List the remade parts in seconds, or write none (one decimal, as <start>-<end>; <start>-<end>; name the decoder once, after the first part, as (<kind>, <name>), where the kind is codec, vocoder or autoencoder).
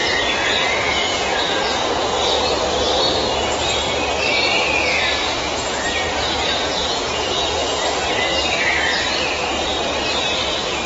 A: 0.0-2.2 (vocoder, Vocos); 5.0-7.8